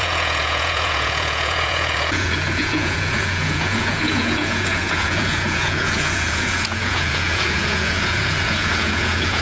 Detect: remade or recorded remade